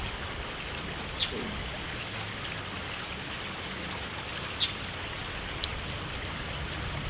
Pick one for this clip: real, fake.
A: real